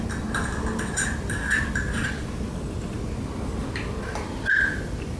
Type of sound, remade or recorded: recorded